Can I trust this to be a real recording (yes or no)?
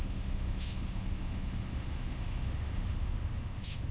no